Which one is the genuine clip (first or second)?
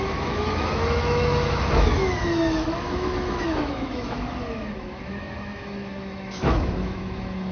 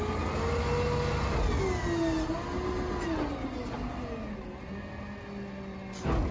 second